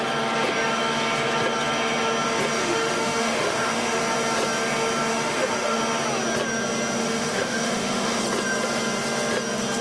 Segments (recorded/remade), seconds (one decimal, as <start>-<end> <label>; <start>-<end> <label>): 0.0-2.6 recorded; 2.6-4.0 remade; 4.0-5.1 recorded; 5.1-5.8 remade; 5.8-7.0 recorded; 7.0-8.2 remade; 8.2-9.8 recorded